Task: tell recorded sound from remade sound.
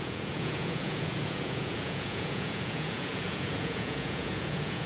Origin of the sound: remade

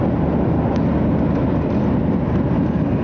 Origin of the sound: recorded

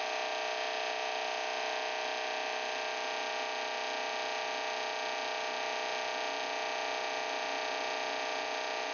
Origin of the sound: recorded